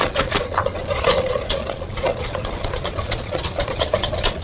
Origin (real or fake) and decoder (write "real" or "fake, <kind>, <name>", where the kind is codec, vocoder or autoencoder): fake, vocoder, Vocos